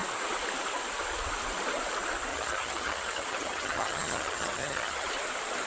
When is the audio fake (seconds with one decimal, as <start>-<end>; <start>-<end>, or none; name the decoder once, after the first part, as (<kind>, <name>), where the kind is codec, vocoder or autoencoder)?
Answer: 2.3-5.1 (vocoder, HiFi-GAN)